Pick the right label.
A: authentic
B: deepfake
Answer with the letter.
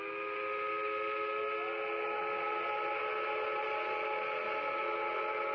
A